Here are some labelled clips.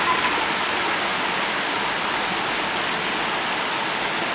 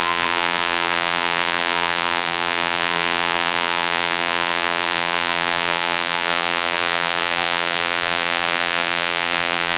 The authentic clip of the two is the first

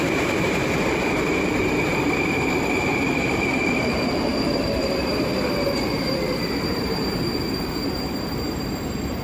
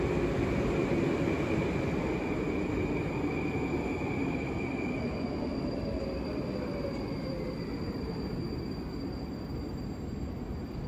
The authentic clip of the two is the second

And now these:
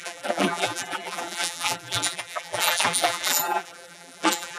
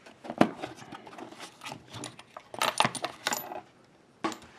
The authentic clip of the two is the second